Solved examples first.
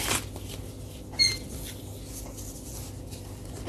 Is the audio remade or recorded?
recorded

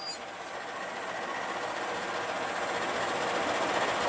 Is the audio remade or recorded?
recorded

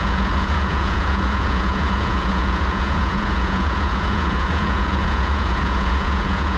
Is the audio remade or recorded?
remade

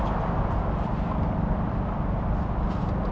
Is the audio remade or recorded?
recorded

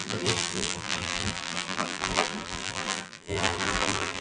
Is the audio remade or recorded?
remade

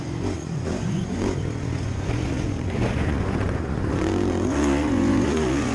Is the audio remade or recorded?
remade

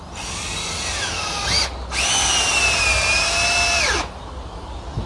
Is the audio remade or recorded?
recorded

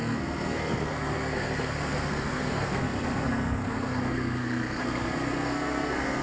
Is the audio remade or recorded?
remade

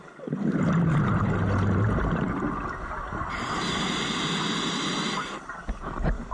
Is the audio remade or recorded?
recorded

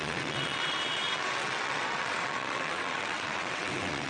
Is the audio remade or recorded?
remade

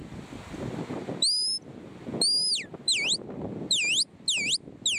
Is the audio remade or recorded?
recorded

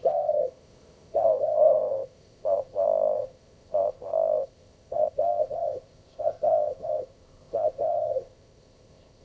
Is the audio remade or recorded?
remade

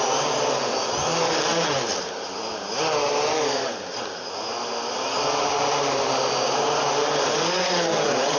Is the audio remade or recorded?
recorded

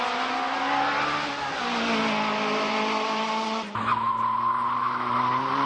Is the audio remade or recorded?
recorded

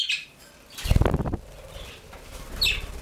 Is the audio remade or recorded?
remade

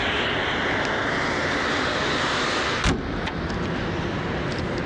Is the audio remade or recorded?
recorded